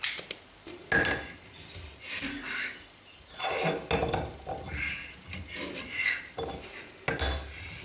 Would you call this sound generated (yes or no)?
no